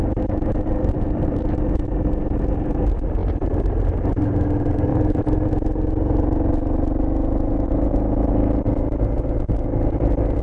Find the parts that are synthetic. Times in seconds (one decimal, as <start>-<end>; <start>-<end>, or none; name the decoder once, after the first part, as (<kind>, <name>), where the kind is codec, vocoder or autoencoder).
0.9-1.9 (vocoder, BigVGAN v2); 4.9-5.5